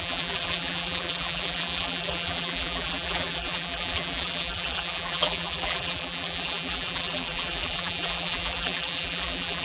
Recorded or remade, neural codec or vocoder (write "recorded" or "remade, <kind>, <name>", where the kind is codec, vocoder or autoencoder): remade, vocoder, BigVGAN v2